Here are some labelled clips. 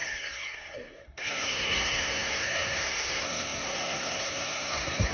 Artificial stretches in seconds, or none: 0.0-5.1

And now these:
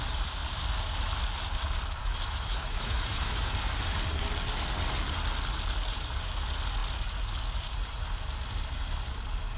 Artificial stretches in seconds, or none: 2.0-3.5

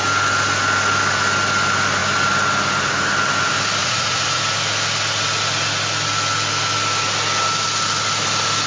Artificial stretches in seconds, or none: 3.8-4.4

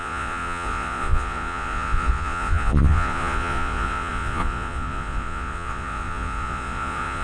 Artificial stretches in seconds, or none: 0.0-7.2

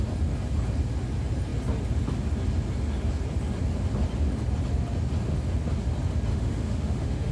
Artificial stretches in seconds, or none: 6.3-7.3